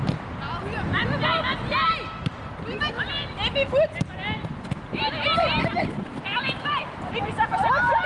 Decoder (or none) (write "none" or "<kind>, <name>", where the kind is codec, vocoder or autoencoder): none